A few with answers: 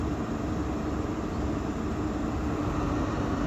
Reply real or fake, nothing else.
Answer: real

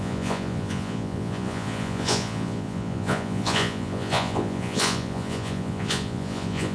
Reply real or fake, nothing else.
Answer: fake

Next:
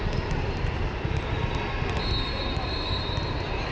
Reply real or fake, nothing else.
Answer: real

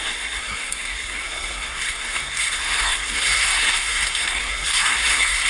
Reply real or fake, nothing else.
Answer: fake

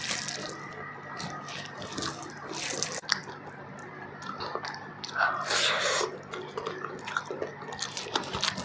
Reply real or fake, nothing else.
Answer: real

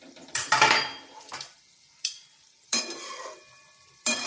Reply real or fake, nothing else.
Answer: fake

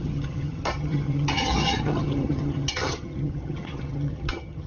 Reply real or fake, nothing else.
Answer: fake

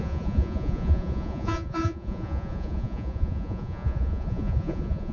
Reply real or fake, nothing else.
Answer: fake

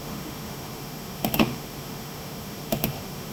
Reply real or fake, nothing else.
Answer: fake